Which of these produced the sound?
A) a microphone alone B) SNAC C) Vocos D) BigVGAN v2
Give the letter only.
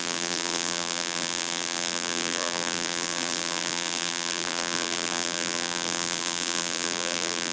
D